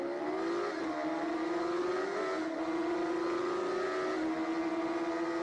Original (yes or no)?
yes